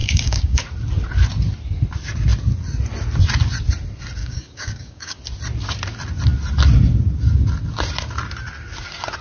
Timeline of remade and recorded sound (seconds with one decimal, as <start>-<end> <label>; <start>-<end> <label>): 0.0-0.6 remade; 0.6-4.2 recorded; 4.2-5.2 remade; 5.2-9.2 recorded

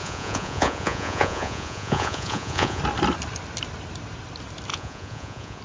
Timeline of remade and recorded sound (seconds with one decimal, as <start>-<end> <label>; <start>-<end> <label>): 0.0-2.8 remade; 2.8-4.7 recorded; 4.7-5.6 remade